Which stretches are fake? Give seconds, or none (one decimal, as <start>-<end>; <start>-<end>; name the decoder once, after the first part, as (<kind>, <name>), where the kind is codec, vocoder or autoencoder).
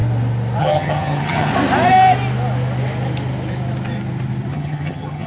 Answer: 0.6-1.5 (vocoder, HiFi-GAN); 4.5-5.3